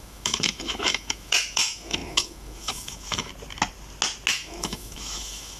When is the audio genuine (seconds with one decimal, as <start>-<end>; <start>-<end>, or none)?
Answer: 3.3-4.3